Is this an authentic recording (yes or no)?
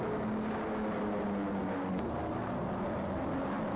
yes